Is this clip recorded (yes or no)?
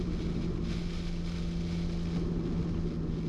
yes